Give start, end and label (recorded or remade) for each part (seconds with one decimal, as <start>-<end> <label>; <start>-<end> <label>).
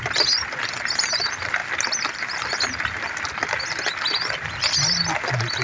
0.0-5.6 recorded